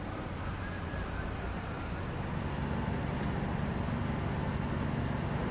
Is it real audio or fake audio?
real